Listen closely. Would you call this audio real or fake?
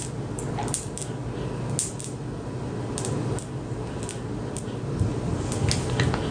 real